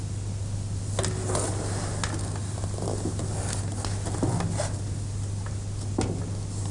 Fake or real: real